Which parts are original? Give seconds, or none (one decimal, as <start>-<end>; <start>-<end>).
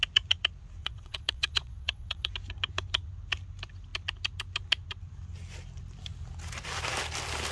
0.0-0.8; 2.3-7.5